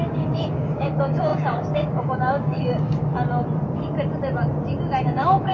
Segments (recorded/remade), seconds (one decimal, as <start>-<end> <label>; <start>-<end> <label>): 0.0-3.1 remade; 3.1-5.0 recorded; 5.0-5.5 remade

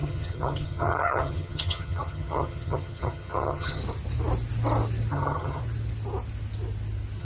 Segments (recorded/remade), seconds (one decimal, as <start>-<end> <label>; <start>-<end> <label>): 0.0-3.8 remade; 3.8-5.1 recorded; 5.1-5.6 remade; 5.6-7.2 recorded

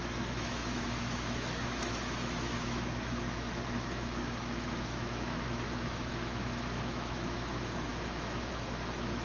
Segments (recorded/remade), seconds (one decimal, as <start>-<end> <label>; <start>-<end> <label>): 0.0-9.2 remade

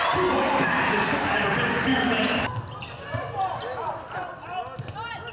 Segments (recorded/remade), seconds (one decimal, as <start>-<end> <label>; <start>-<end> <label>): 0.0-5.3 recorded

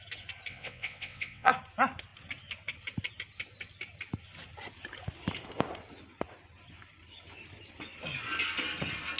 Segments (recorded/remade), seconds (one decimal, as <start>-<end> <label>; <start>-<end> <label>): 0.0-0.5 recorded; 0.5-1.5 remade; 1.5-9.2 recorded

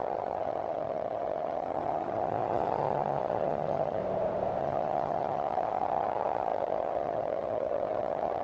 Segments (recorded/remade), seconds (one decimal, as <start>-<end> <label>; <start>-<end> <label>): 0.0-4.0 remade; 4.0-4.6 recorded; 4.6-8.4 remade

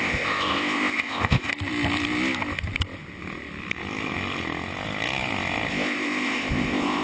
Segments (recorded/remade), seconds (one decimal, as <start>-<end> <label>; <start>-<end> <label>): 0.0-1.5 remade; 1.5-5.7 recorded; 5.7-7.0 remade

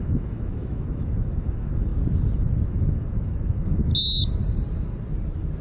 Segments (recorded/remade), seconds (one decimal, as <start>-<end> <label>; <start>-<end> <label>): 0.0-1.9 remade; 1.9-2.7 recorded; 2.7-3.9 remade; 3.9-5.6 recorded